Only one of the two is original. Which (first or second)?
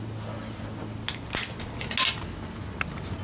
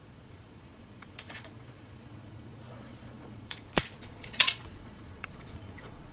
first